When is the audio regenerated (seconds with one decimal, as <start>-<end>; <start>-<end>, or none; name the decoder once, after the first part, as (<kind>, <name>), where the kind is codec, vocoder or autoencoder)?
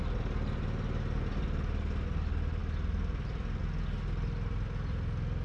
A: none